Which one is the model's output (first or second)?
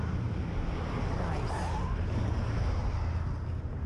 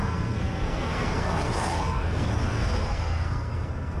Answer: second